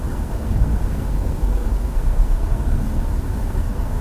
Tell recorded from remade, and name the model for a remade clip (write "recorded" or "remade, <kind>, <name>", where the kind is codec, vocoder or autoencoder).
remade, codec, SNAC